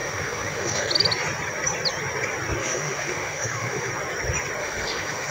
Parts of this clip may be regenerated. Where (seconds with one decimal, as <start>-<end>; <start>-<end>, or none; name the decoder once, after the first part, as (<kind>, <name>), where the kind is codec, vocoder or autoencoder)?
0.0-0.9 (autoencoder, DAC-VAE); 2.6-3.9; 4.6-5.3